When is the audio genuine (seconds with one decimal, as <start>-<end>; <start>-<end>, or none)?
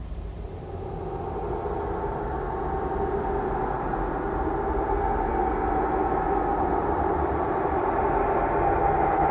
0.0-6.8; 8.5-9.3